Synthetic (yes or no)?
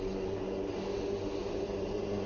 no